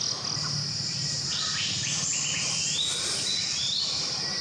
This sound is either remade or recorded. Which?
recorded